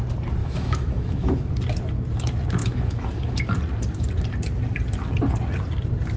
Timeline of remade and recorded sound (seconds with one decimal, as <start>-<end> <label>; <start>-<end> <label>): 0.0-0.4 recorded; 0.4-1.5 remade; 1.5-2.6 recorded; 2.6-3.4 remade; 3.4-6.2 recorded